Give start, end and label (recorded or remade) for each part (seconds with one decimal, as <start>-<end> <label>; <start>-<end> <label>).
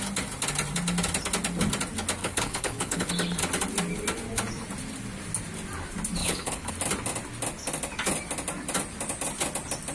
0.0-2.2 recorded; 2.2-3.1 remade; 3.1-6.2 recorded; 6.2-6.7 remade; 6.7-9.9 recorded